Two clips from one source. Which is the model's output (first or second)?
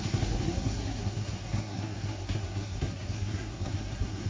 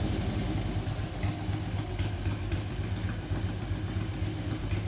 first